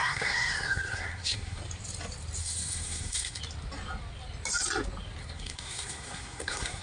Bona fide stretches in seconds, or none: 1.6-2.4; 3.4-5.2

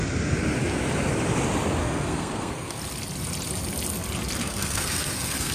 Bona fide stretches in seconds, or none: 0.0-1.8; 2.8-4.4

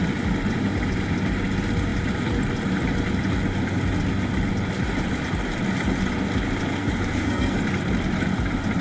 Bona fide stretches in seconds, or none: 0.0-6.8; 7.6-8.8

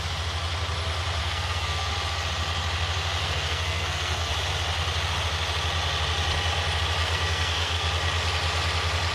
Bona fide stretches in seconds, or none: 0.0-1.2; 1.9-3.2; 4.3-7.0; 7.9-9.1